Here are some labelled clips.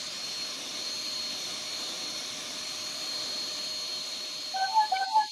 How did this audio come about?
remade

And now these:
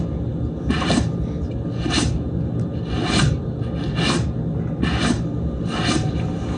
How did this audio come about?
recorded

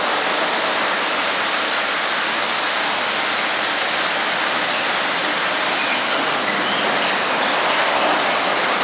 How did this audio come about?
recorded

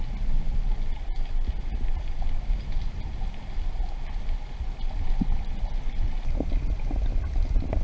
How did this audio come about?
recorded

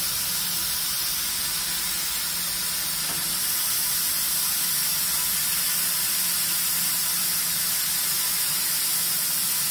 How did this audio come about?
recorded